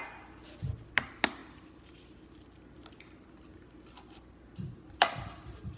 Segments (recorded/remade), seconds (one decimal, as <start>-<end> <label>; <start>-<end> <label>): 0.0-5.8 recorded